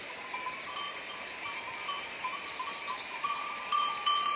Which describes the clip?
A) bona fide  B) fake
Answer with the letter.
B